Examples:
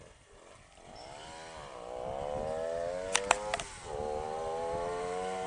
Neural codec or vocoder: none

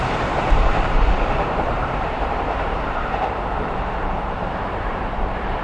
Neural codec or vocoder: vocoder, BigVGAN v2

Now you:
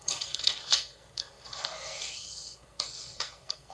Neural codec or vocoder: codec, SNAC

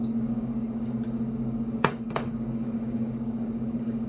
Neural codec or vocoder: codec, DAC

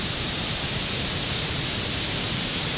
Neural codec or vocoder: none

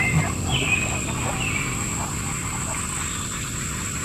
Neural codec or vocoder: none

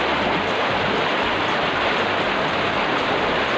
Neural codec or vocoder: none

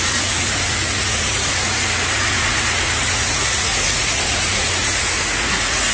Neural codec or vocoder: vocoder, Vocos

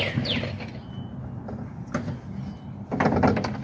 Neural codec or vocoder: none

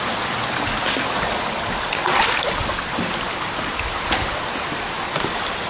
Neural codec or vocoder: none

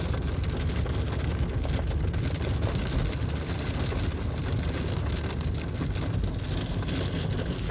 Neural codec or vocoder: none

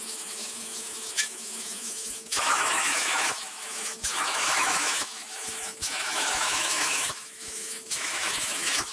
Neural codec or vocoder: autoencoder, DAC-VAE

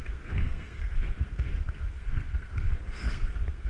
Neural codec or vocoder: codec, SNAC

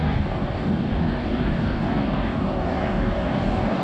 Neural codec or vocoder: codec, DAC